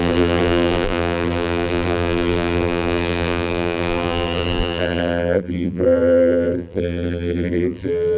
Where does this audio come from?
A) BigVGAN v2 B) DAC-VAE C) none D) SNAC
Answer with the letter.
A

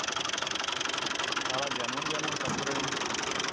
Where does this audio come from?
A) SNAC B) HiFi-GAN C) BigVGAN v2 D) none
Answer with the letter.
D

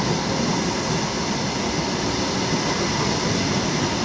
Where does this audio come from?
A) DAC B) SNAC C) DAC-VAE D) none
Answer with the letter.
D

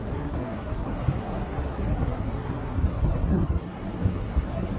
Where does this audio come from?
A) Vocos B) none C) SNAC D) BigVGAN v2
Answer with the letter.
C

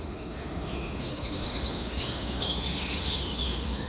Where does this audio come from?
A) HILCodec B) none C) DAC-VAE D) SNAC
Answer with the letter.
C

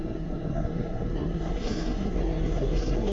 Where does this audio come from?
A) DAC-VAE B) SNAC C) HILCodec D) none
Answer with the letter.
B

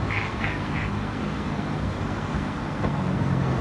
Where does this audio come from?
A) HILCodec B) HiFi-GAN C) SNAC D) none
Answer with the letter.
C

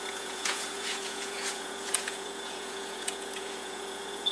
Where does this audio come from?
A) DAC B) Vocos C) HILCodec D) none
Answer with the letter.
B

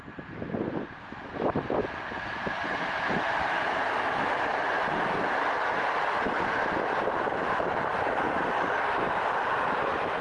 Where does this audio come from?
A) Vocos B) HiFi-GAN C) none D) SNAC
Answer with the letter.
C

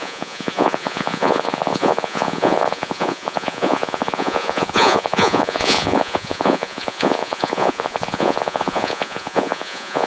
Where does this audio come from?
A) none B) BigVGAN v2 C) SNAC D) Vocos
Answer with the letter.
D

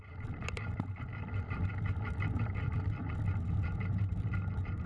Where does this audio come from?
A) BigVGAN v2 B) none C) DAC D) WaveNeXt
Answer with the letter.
B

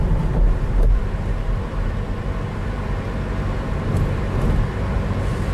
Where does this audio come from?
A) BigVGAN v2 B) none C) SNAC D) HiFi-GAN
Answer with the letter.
B